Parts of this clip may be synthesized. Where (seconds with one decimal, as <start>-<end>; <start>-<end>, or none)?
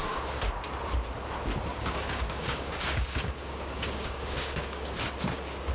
1.7-5.1